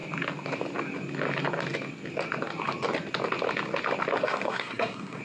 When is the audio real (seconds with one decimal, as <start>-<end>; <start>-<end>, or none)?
0.0-4.2